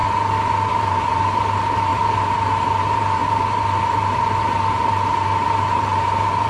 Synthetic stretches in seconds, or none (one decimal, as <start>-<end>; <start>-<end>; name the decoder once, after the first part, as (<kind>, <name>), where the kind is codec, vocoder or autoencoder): 0.7-6.5 (vocoder, BigVGAN v2)

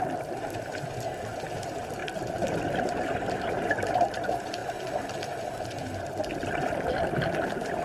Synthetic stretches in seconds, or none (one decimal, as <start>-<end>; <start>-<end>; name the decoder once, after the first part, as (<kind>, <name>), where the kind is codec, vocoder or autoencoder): 0.0-2.0 (vocoder, BigVGAN v2); 2.8-4.6; 5.8-7.8

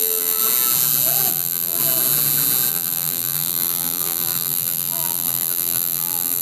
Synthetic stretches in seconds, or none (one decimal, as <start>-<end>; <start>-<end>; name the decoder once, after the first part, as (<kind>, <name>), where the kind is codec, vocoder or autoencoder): 0.0-0.4 (vocoder, BigVGAN v2); 1.3-1.8; 2.7-6.4

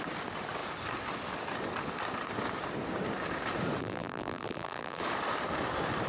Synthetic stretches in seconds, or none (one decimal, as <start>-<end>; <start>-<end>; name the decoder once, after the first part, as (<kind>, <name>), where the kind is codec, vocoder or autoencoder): 3.8-5.0 (vocoder, BigVGAN v2)

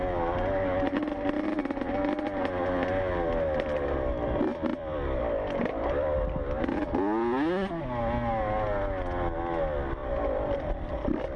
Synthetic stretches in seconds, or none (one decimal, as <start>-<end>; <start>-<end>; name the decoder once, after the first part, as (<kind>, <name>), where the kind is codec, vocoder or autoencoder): 4.7-6.4 (vocoder, BigVGAN v2); 10.0-11.4